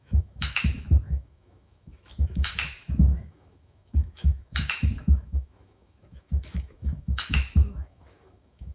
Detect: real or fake fake